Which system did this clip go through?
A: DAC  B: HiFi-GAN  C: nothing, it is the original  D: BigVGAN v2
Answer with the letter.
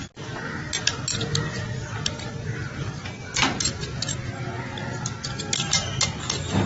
C